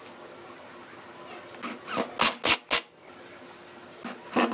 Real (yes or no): yes